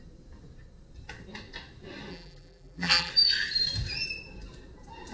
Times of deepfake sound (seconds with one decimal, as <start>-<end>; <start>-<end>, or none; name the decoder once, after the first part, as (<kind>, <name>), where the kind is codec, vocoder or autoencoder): 2.1-3.1 (vocoder, BigVGAN v2)